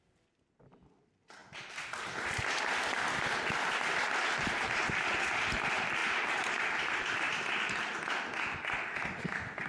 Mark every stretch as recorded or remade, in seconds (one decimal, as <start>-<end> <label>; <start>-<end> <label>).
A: 0.0-6.0 recorded; 6.0-7.8 remade; 7.8-9.7 recorded